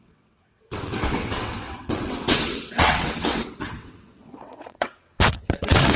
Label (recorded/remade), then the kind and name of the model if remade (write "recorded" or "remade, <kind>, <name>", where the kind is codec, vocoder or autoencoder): remade, vocoder, WaveNeXt